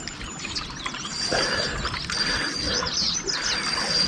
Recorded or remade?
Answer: recorded